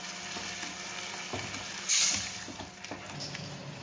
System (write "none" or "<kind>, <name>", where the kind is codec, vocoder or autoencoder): none